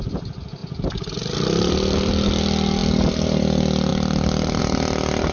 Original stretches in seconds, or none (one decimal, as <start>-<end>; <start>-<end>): 0.0-3.9; 4.6-5.3